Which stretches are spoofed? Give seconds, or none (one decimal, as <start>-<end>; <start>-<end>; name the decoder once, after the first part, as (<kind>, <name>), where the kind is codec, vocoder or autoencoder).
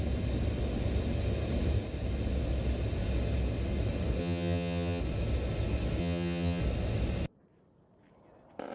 4.2-5.0 (vocoder, HiFi-GAN); 6.0-6.6